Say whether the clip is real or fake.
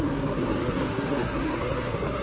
fake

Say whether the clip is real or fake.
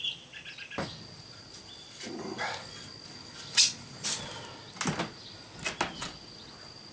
real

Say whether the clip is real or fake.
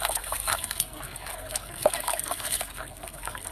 fake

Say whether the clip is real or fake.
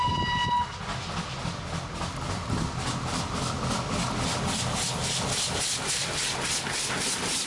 real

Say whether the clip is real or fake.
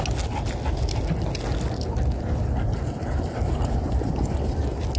real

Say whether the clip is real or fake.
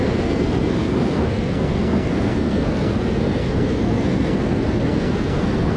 fake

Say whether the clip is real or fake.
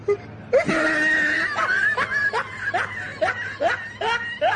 real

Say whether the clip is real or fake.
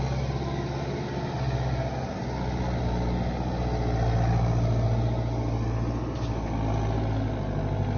real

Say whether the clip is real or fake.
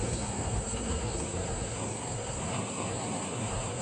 fake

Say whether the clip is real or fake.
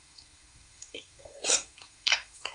fake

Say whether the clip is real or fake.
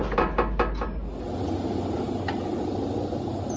real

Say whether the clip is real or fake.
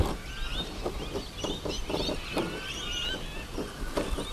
real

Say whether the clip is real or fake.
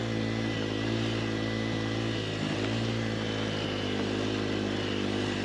real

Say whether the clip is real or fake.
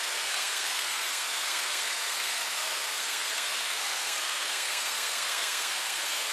fake